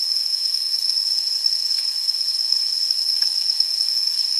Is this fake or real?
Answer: fake